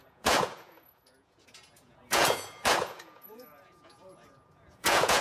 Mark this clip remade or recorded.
remade